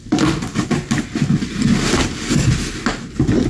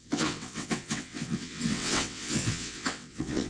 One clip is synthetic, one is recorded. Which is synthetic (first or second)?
second